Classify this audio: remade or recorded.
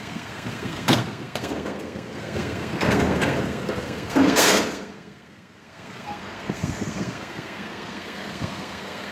remade